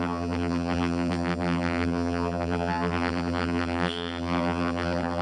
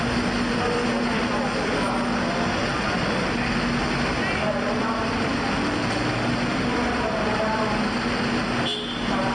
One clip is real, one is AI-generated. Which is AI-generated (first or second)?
first